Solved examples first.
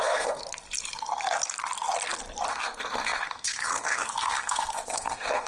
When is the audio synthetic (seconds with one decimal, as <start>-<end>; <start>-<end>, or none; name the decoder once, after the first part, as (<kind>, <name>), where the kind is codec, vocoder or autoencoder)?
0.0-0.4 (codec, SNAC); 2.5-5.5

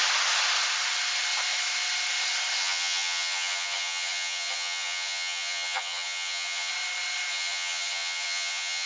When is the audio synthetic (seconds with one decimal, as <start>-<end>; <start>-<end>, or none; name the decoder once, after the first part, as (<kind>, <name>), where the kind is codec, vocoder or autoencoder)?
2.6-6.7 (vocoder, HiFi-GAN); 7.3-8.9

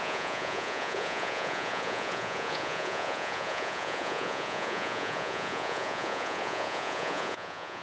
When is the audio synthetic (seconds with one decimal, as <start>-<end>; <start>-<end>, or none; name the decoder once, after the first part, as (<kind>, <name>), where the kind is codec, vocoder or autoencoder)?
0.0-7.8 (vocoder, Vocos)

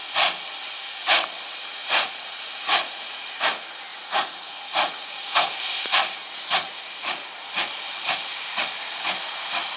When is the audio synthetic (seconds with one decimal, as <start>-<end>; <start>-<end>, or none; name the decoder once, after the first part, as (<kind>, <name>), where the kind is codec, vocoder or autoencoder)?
1.8-3.4 (vocoder, Vocos); 3.9-5.4; 6.2-7.3

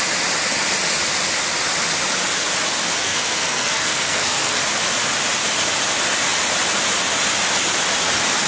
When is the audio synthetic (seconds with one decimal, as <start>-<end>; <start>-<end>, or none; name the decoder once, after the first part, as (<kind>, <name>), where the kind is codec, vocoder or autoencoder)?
3.0-4.6 (codec, SNAC)

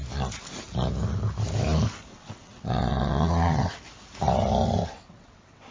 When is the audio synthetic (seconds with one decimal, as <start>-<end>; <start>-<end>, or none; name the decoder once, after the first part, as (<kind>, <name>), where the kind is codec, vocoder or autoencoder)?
2.1-3.7 (vocoder, WaveNeXt); 4.8-5.7

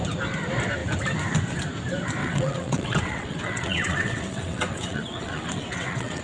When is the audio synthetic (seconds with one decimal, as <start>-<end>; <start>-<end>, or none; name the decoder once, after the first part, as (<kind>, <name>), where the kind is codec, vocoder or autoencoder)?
2.2-6.2 (vocoder, WaveNeXt)